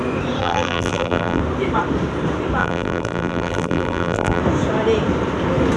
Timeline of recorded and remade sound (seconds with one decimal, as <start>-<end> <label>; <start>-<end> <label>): 0.0-0.4 recorded; 0.4-1.4 remade; 1.4-2.6 recorded; 2.6-4.4 remade; 4.4-5.8 recorded